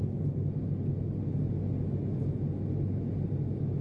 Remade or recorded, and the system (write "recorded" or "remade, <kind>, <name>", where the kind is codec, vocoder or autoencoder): recorded